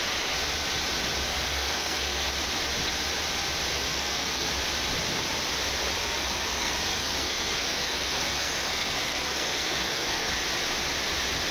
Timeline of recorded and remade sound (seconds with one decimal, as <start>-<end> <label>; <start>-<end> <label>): 0.0-1.3 recorded; 1.3-2.3 remade; 2.3-3.7 recorded; 3.7-4.5 remade; 4.5-6.0 recorded; 6.0-10.3 remade; 10.3-11.5 recorded